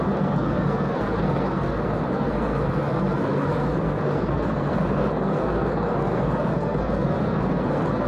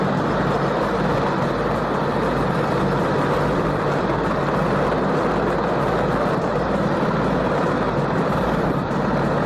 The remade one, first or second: first